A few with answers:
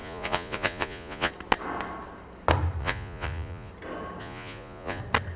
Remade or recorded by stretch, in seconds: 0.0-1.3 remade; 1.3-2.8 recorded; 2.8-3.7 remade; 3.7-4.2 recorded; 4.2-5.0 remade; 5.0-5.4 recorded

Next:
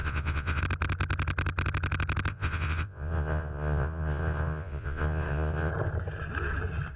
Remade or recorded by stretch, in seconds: 0.0-0.6 remade; 0.6-2.3 recorded; 2.3-5.7 remade; 5.7-7.0 recorded

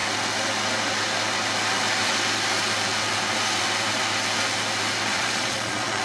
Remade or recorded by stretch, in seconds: 0.0-5.1 recorded; 5.1-6.0 remade

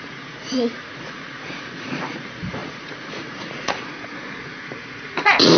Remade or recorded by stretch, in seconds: 0.0-5.6 remade